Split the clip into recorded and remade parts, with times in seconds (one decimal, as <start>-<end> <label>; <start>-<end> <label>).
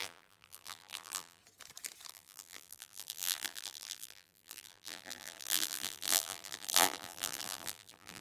0.0-1.4 remade; 1.4-2.1 recorded; 2.1-8.2 remade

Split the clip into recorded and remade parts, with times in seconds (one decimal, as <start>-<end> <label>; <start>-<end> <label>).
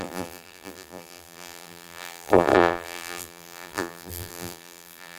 0.0-5.2 remade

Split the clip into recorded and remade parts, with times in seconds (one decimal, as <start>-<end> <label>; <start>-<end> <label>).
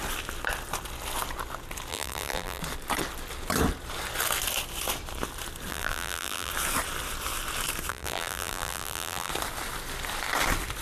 0.0-1.9 recorded; 1.9-2.6 remade; 2.6-5.7 recorded; 5.7-6.5 remade; 6.5-7.9 recorded; 7.9-9.3 remade; 9.3-10.8 recorded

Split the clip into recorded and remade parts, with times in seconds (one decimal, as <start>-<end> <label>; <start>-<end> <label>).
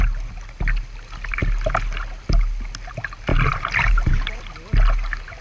0.0-3.3 recorded; 3.3-4.4 remade; 4.4-5.4 recorded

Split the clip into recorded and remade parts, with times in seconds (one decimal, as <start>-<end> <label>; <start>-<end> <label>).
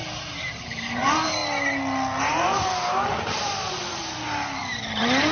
0.0-0.6 recorded; 0.6-1.4 remade; 1.4-2.2 recorded; 2.2-5.3 remade